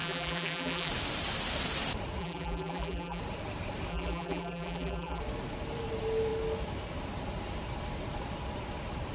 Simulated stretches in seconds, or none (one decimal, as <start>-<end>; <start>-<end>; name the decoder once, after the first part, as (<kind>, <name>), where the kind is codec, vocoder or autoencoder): 0.0-0.9 (vocoder, BigVGAN v2); 2.2-3.2; 3.9-5.2